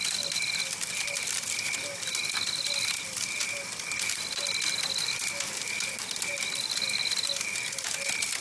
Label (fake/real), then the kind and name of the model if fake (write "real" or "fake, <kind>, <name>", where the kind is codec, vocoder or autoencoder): real